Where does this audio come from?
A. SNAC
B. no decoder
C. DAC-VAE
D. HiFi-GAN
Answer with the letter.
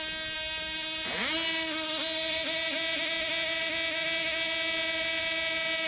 B